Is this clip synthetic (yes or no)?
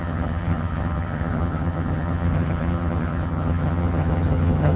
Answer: yes